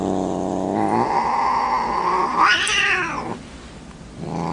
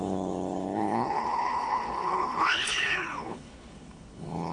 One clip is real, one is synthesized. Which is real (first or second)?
first